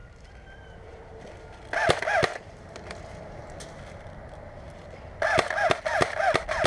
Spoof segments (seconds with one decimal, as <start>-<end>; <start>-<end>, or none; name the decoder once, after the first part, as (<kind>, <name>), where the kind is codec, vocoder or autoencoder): 0.0-1.1 (vocoder, BigVGAN v2)